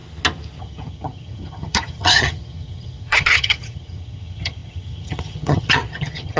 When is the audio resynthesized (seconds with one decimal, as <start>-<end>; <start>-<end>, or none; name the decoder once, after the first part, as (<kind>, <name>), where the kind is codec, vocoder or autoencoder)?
0.6-6.4 (vocoder, HiFi-GAN)